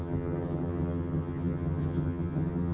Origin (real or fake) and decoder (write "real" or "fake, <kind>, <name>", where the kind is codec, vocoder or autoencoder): fake, vocoder, HiFi-GAN